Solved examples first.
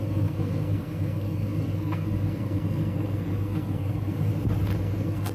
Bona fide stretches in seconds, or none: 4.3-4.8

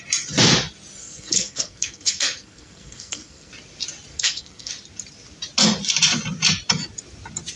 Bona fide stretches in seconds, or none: 0.0-1.0; 3.5-4.1; 4.7-7.6

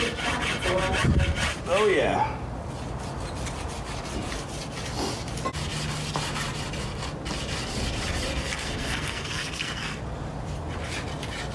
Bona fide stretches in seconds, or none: 0.0-8.4; 10.0-11.5